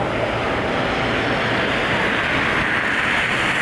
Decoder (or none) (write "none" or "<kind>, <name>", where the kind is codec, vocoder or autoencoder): none